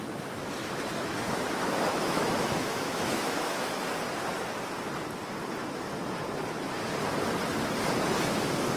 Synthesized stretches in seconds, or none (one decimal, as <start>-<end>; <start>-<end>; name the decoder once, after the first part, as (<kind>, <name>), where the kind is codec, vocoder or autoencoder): 0.6-3.9 (autoencoder, DAC-VAE)

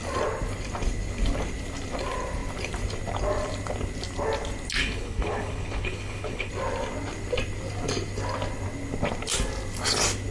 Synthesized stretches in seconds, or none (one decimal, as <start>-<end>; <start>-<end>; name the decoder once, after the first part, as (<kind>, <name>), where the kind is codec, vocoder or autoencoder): 4.8-6.5 (codec, HILCodec)

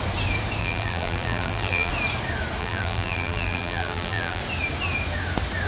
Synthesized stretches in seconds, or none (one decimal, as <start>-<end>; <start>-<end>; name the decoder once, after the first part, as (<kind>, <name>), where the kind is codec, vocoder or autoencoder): 0.6-1.9 (vocoder, BigVGAN v2); 2.6-4.4